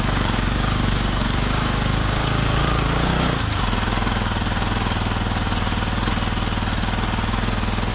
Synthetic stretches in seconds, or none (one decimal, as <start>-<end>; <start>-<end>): 0.0-3.1